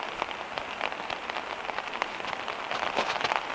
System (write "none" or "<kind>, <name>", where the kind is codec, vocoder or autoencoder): none